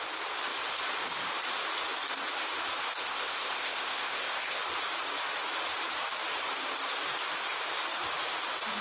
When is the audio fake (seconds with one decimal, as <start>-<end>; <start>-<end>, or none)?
3.0-4.6